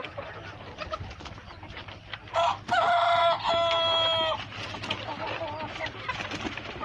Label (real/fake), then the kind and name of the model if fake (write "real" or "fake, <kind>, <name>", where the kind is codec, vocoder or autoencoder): real